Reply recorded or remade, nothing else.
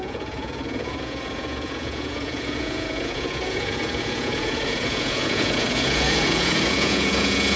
remade